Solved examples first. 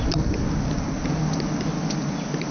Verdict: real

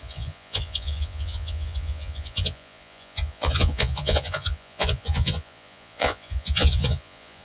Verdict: fake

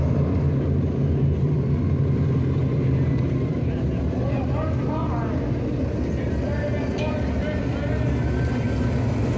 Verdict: real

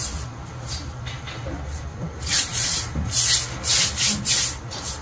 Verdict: real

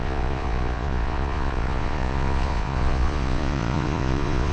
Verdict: fake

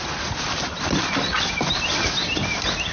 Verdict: real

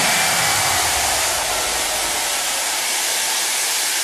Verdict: real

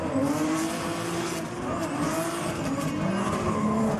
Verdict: real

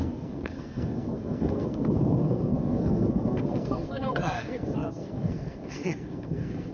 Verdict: fake